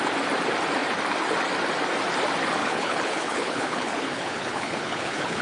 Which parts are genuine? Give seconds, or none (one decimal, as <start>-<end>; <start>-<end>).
0.0-2.6